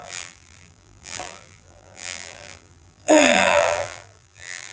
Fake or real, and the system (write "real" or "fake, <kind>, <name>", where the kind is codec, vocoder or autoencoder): fake, vocoder, BigVGAN v2